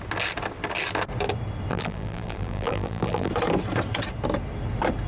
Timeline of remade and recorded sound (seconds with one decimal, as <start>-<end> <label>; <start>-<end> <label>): 0.0-1.7 recorded; 1.7-3.3 remade; 3.3-5.1 recorded